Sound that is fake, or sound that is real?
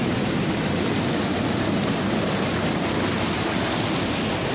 real